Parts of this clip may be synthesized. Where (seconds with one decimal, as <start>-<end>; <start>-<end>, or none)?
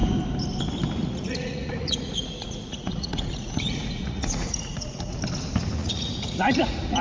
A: 1.0-5.2; 5.8-7.0